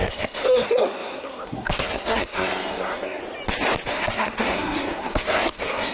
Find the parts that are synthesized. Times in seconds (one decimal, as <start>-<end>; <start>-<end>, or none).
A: 0.0-3.2; 3.9-5.9